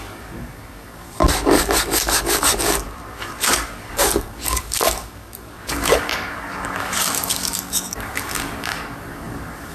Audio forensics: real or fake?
fake